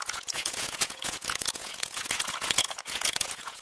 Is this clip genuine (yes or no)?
no